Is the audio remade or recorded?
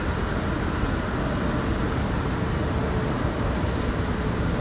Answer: recorded